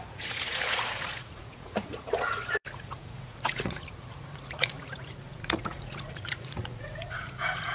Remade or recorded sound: remade